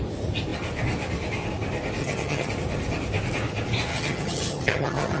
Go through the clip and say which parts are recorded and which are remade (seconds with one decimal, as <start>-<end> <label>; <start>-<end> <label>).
0.0-2.0 recorded; 2.0-2.5 remade; 2.5-3.9 recorded; 3.9-5.2 remade